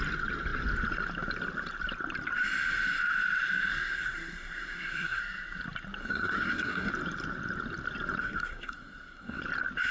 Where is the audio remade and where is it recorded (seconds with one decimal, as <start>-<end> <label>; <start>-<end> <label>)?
0.0-3.7 recorded; 3.7-5.2 remade; 5.2-6.0 recorded; 6.0-6.9 remade; 6.9-8.2 recorded; 8.2-9.4 remade; 9.4-9.9 recorded